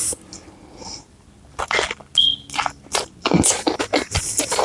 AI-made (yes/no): no